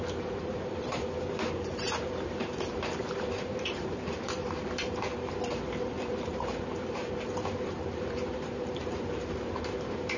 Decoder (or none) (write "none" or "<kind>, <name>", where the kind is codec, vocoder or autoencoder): vocoder, BigVGAN v2